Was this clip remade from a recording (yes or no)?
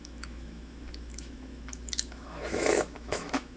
yes